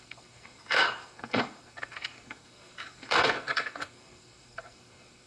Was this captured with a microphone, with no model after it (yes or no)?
no